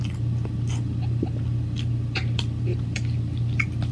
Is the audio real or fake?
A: real